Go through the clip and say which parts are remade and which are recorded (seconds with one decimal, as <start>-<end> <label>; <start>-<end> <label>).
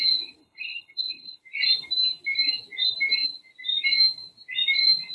0.0-0.4 recorded; 0.4-1.4 remade; 1.4-5.1 recorded